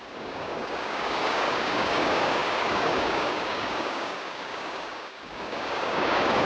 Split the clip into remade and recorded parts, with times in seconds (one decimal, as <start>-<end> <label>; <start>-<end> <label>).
0.0-6.4 remade